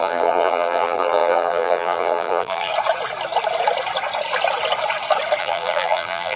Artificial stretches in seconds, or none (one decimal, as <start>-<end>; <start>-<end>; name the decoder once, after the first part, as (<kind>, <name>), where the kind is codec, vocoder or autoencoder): 0.0-2.7 (vocoder, BigVGAN v2); 5.4-6.4